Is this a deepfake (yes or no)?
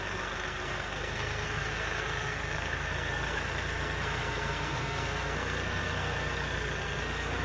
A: yes